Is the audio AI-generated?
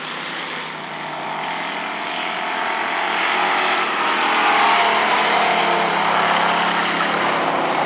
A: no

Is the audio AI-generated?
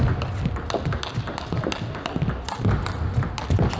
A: no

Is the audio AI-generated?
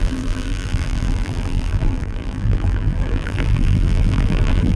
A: yes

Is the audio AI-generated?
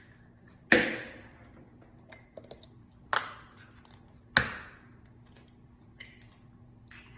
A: no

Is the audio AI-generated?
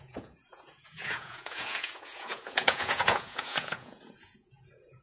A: yes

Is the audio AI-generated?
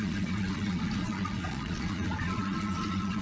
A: yes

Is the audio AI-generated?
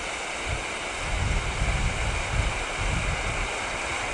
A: no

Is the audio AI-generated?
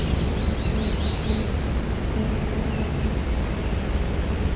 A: no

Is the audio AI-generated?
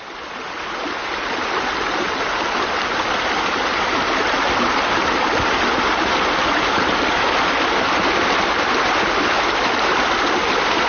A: no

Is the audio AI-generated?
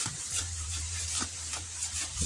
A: yes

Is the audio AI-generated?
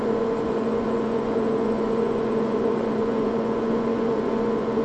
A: yes